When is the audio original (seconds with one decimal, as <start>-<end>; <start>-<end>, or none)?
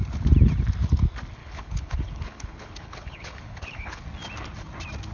0.0-1.4; 4.0-5.1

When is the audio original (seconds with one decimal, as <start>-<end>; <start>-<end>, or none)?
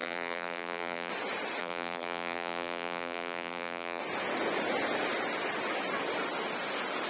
1.1-1.6; 4.0-7.1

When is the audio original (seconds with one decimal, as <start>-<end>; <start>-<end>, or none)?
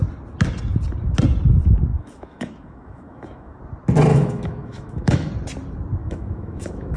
0.0-1.9; 3.6-4.1; 5.3-6.0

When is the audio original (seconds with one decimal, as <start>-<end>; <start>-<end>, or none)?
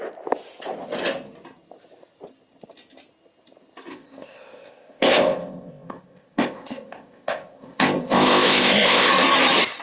0.0-3.9; 9.1-9.8